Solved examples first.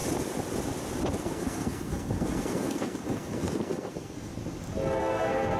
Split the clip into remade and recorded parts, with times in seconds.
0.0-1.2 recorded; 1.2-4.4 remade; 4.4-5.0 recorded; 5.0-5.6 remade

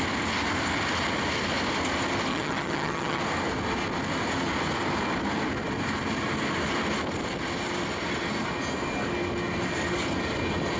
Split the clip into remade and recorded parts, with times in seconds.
0.0-2.3 recorded; 2.3-3.2 remade; 3.2-10.8 recorded

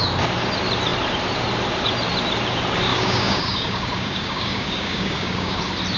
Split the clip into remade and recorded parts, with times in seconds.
0.0-2.9 recorded; 2.9-5.6 remade; 5.6-6.0 recorded